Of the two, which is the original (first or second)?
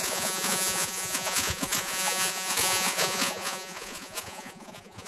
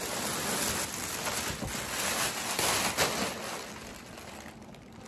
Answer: second